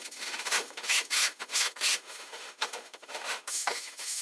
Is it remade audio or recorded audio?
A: remade